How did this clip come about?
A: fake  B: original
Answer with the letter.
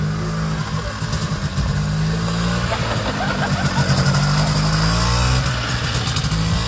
B